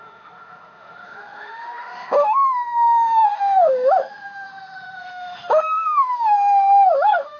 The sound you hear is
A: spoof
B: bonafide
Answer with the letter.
A